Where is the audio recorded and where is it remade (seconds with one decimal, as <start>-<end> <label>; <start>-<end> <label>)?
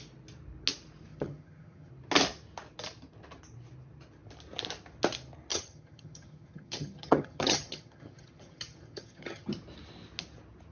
0.0-1.1 recorded; 1.1-1.9 remade; 1.9-5.5 recorded; 5.5-9.5 remade; 9.5-10.7 recorded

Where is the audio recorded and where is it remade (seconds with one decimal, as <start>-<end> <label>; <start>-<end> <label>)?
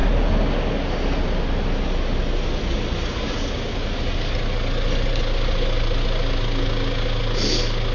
0.0-7.9 recorded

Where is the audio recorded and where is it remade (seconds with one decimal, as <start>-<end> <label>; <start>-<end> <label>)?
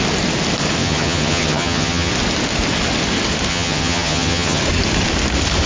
0.0-0.8 recorded; 0.8-2.1 remade; 2.1-3.5 recorded; 3.5-4.6 remade; 4.6-5.7 recorded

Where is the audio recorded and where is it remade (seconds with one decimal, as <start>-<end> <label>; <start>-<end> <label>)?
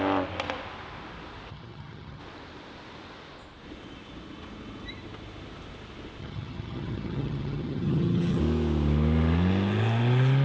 0.0-1.5 recorded; 1.5-2.2 remade; 2.2-6.2 recorded; 6.2-8.4 remade; 8.4-10.4 recorded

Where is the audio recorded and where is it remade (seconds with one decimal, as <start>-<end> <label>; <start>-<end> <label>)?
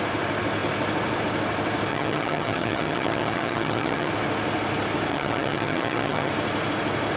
0.0-1.9 recorded; 1.9-4.1 remade; 4.1-5.1 recorded; 5.1-6.3 remade; 6.3-7.2 recorded